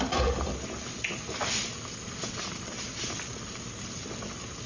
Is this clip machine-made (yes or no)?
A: no